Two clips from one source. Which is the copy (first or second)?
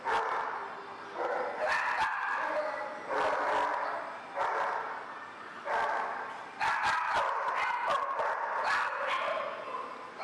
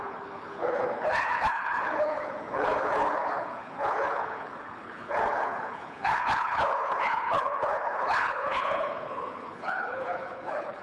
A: second